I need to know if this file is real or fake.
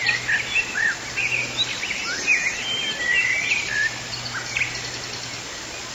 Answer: real